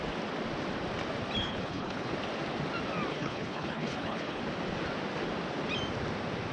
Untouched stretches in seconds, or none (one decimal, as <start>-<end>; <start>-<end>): 0.0-1.4; 2.1-3.1; 4.4-6.5